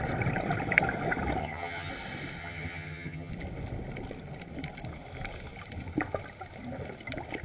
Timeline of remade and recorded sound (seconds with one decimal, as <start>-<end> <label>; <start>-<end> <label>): 0.0-1.4 recorded; 1.4-1.9 remade; 1.9-2.4 recorded; 2.4-3.3 remade; 3.3-7.4 recorded